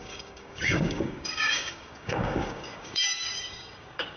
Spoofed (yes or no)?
yes